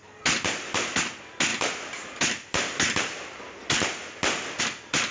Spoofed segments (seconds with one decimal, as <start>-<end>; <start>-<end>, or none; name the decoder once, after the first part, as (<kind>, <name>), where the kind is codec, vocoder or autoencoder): none